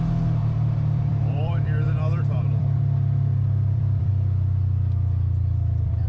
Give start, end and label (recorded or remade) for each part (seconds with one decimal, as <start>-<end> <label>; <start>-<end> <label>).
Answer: 0.0-0.4 recorded; 0.4-4.1 remade; 4.1-6.1 recorded